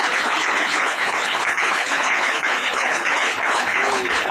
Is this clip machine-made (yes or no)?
yes